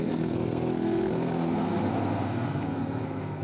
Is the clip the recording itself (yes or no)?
no